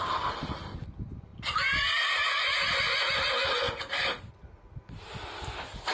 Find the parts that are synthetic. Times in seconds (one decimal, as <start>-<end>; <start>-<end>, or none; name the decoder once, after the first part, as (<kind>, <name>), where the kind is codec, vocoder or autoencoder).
none

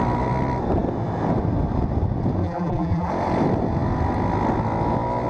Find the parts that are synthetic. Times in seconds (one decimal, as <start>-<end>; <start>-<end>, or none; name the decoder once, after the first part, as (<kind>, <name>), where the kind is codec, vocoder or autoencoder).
2.4-3.1 (vocoder, BigVGAN v2)

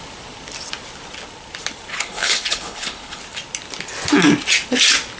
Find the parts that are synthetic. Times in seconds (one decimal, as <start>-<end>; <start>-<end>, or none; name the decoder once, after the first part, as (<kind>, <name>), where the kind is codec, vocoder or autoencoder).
1.9-3.2 (codec, HILCodec)

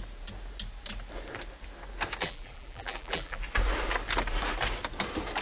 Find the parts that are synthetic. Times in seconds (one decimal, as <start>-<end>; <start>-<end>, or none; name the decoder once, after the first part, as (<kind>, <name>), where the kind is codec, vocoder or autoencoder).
2.2-3.4 (vocoder, BigVGAN v2)